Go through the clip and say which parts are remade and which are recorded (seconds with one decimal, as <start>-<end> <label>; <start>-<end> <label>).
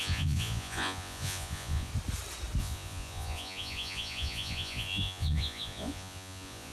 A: 0.0-1.9 remade; 1.9-2.6 recorded; 2.6-6.7 remade